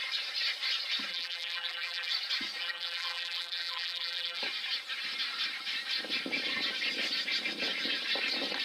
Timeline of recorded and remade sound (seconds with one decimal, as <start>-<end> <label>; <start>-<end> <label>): 0.0-1.1 recorded; 1.1-2.1 remade; 2.1-2.6 recorded; 2.6-4.4 remade; 4.4-8.6 recorded